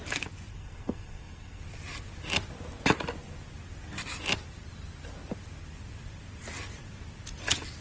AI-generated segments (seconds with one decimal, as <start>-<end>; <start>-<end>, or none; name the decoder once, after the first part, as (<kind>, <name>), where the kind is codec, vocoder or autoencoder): 0.5-1.6 (codec, SNAC)

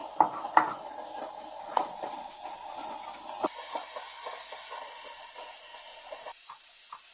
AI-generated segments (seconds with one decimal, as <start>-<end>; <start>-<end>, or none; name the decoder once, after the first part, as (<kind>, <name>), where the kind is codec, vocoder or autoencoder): 1.6-2.8 (vocoder, Vocos); 4.8-7.1

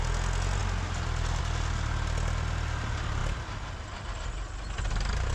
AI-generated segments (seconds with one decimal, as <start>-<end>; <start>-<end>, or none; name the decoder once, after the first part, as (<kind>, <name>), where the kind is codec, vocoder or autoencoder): none

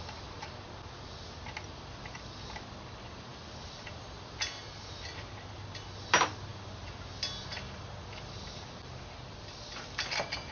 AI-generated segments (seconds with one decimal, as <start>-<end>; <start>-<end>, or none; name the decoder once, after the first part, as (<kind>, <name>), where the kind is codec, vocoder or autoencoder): none

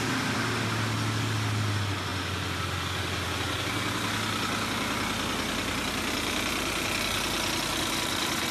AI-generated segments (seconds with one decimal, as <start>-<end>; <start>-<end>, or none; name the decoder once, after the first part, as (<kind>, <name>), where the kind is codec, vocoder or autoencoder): none